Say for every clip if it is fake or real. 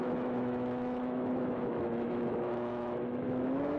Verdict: fake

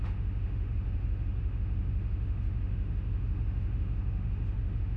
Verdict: fake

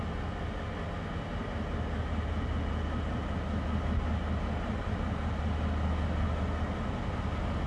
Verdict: real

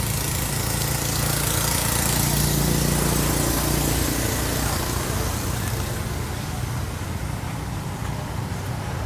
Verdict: real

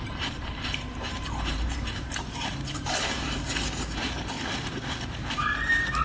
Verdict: fake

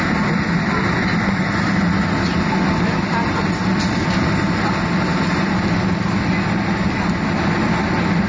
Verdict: real